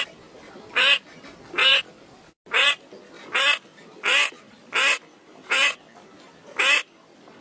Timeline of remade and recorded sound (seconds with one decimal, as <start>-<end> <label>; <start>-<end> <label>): 0.0-7.4 recorded